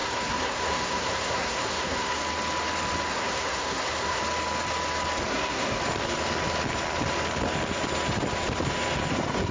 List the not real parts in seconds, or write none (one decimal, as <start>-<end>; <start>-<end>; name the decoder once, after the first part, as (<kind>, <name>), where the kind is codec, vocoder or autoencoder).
0.0-2.2 (codec, SNAC); 3.1-4.2; 5.3-5.8; 9.1-9.5